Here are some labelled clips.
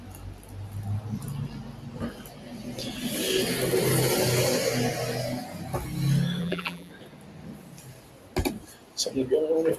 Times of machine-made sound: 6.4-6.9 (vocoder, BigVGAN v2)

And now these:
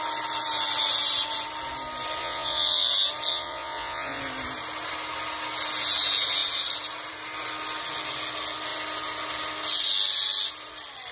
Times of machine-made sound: 2.2-2.9 (vocoder, Vocos); 3.3-4.2

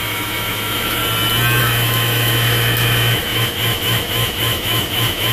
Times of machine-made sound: 0.0-1.0 (autoencoder, DAC-VAE); 1.6-5.3

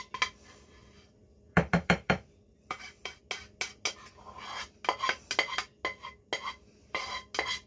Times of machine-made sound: 0.8-3.2 (vocoder, BigVGAN v2)

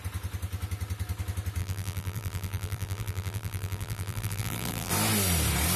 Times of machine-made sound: 1.6-4.9 (vocoder, BigVGAN v2)

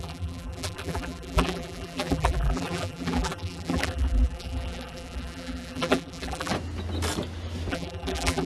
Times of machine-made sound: 0.0-6.5 (vocoder, BigVGAN v2); 7.7-8.4